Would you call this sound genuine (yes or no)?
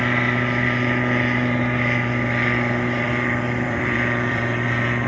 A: no